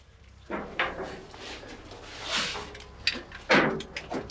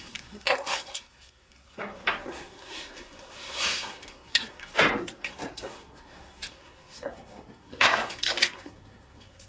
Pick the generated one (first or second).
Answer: second